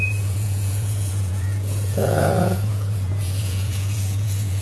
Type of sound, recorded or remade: remade